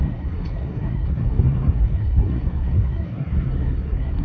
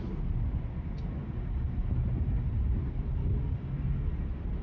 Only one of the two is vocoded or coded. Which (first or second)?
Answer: first